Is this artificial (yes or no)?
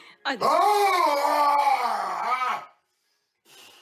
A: no